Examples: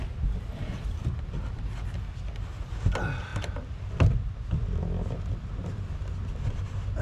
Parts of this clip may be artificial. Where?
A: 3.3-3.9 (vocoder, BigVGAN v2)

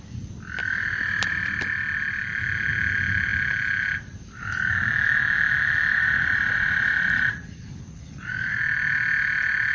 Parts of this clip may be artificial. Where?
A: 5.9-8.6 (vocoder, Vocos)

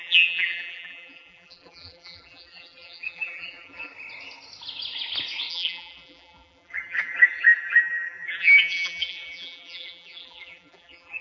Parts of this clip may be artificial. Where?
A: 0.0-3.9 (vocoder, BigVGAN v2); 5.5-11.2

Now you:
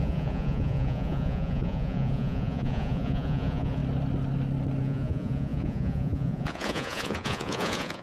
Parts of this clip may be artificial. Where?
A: 0.0-3.8 (vocoder, Vocos); 4.8-8.0

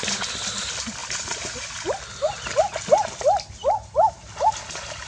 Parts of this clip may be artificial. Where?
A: none